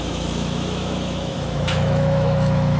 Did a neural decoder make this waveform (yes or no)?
yes